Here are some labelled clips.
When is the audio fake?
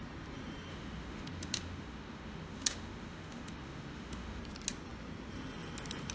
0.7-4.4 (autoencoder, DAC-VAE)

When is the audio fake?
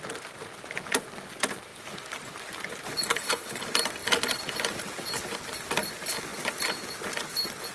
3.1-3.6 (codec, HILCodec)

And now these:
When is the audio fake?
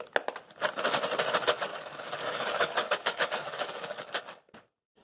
1.7-4.2 (codec, DAC)